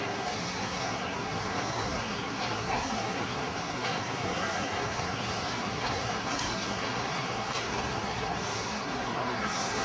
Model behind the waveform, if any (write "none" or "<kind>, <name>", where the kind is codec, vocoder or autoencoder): codec, SNAC